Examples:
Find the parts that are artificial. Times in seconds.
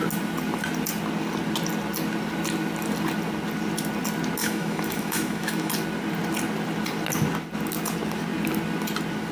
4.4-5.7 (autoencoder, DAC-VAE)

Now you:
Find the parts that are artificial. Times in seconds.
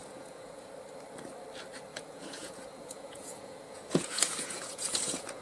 0.0-0.7 (vocoder, Vocos); 1.9-5.4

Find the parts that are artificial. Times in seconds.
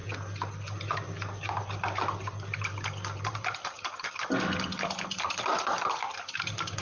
none